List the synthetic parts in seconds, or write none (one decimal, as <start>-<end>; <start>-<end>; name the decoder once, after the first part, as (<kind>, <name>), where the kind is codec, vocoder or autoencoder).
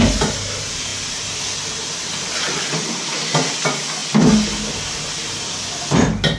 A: none